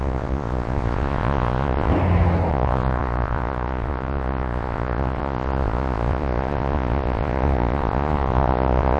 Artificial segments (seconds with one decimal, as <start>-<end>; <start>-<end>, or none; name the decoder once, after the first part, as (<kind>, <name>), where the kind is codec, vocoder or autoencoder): 0.0-1.9 (vocoder, Vocos); 2.5-9.0